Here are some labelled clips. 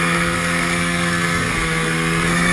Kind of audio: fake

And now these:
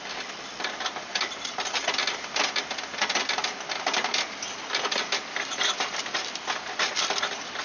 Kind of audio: real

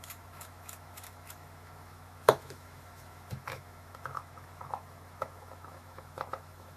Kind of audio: fake